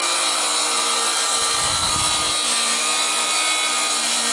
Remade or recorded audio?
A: recorded